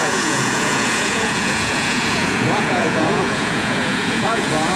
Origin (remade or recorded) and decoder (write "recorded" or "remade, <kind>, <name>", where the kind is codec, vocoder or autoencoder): remade, vocoder, Vocos